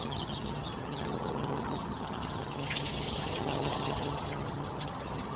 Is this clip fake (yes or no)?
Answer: yes